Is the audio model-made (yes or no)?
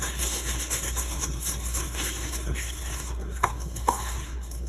yes